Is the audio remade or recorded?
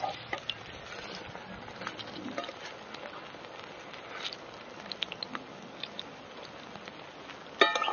recorded